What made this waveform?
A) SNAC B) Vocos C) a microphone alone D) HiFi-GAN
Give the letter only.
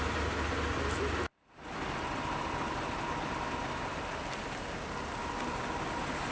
C